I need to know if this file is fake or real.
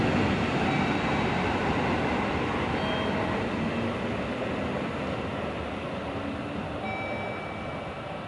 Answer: real